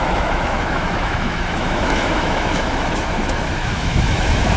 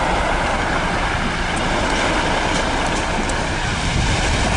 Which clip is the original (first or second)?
second